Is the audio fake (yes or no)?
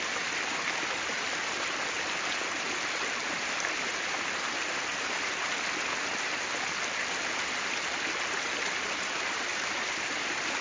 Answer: no